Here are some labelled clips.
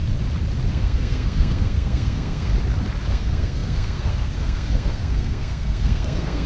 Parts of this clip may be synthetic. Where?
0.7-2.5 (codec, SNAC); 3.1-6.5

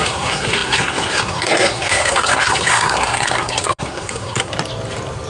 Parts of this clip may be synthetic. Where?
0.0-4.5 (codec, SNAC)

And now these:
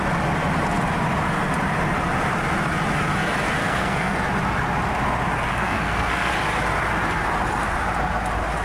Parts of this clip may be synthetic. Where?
3.6-4.2 (codec, SNAC); 5.5-6.3

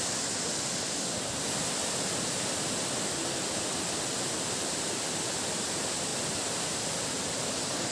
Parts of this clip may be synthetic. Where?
none

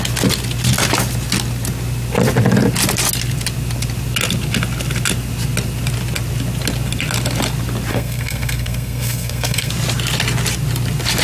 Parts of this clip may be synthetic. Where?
7.9-9.7 (codec, SNAC)

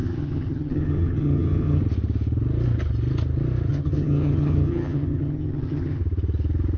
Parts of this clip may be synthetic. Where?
0.0-1.8 (vocoder, HiFi-GAN); 3.7-6.0